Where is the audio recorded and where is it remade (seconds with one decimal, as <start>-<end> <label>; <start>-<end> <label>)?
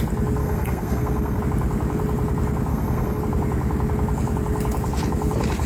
0.0-0.4 recorded; 0.4-1.4 remade; 1.4-2.7 recorded; 2.7-3.2 remade; 3.2-5.7 recorded